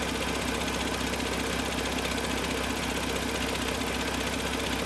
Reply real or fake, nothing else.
real